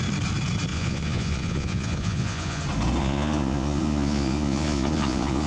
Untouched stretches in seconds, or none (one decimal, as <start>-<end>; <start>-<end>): 0.0-0.7; 2.6-3.0